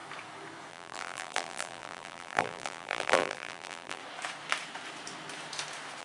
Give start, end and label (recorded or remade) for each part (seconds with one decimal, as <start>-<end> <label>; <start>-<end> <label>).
0.0-0.7 recorded; 0.7-4.0 remade; 4.0-6.0 recorded